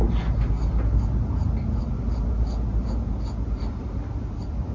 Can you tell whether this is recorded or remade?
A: recorded